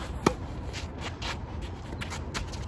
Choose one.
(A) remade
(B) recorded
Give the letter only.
B